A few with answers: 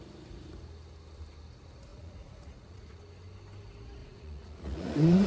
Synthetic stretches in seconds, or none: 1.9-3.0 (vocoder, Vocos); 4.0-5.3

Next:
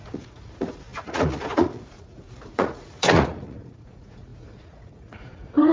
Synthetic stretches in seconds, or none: 0.0-5.7 (vocoder, Vocos)

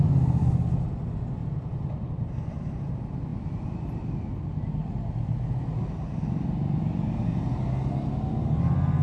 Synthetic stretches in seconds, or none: 1.4-2.3 (vocoder, BigVGAN v2)